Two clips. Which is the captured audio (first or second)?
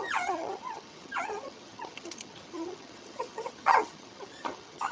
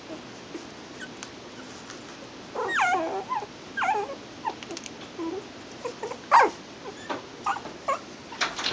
second